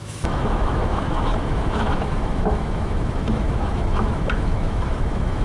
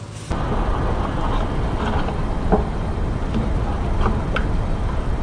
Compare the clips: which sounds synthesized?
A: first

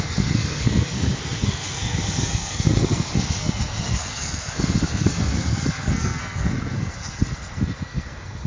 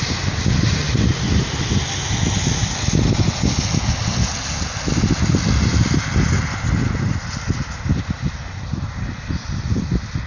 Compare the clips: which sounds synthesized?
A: first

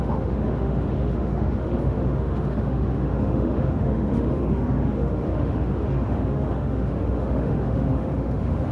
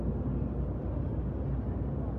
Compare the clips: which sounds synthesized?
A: first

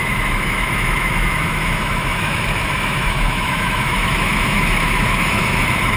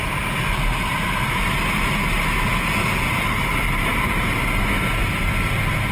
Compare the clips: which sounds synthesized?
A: first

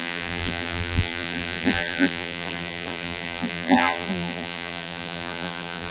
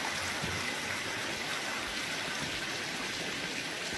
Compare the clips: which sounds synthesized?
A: first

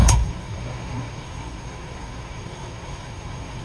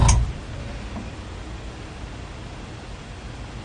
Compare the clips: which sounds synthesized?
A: first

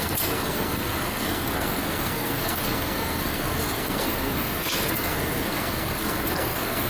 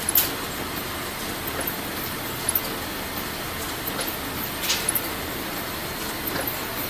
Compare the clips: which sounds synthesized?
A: first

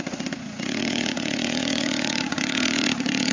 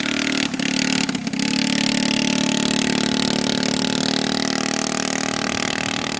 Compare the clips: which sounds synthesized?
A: first